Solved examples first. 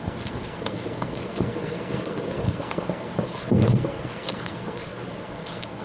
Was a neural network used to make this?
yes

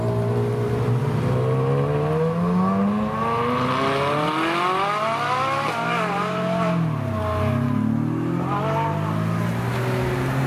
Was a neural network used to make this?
no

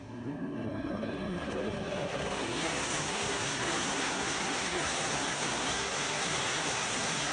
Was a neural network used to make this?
yes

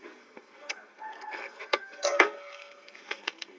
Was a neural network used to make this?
yes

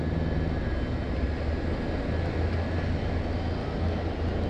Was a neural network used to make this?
no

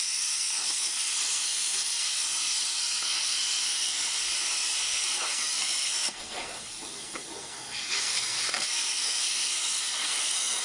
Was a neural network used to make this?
yes